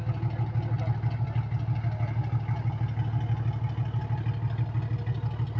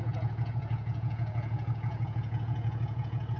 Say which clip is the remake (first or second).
second